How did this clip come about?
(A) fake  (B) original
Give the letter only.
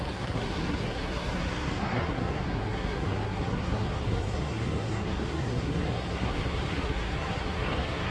A